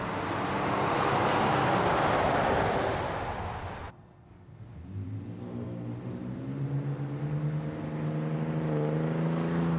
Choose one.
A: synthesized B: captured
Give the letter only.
B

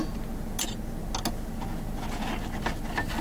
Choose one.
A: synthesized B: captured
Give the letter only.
B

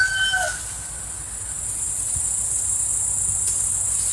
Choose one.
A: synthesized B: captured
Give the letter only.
B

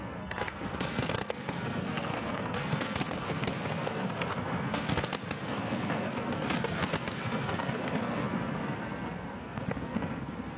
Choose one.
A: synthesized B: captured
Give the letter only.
A